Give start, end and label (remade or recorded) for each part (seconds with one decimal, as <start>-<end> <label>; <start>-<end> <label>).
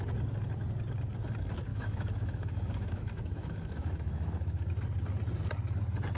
0.0-1.7 recorded; 1.7-4.7 remade; 4.7-6.2 recorded